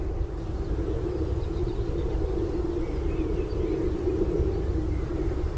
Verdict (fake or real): fake